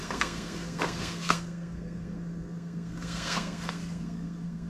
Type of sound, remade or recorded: remade